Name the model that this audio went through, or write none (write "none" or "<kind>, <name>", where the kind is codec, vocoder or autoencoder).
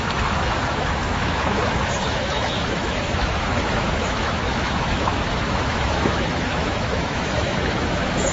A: autoencoder, DAC-VAE